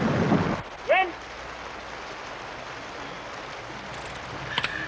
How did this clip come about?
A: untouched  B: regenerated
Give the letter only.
A